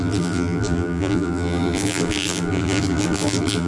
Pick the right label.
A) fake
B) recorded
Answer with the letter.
A